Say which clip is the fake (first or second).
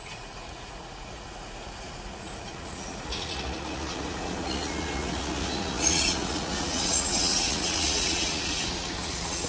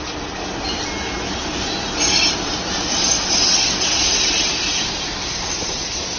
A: first